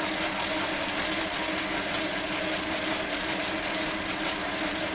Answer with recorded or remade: recorded